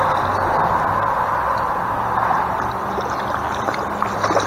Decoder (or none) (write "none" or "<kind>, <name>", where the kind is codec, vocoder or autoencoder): none